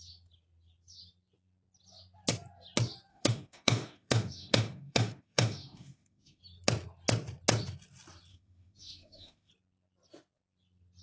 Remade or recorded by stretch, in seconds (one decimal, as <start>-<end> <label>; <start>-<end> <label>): 0.0-3.1 recorded; 3.1-6.4 remade; 6.4-8.3 recorded; 8.3-9.5 remade; 9.5-11.0 recorded